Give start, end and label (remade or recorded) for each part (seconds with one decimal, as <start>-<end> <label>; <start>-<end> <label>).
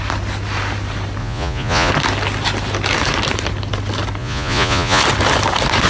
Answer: 0.0-1.2 recorded; 1.2-1.9 remade; 1.9-4.2 recorded; 4.2-5.0 remade; 5.0-5.9 recorded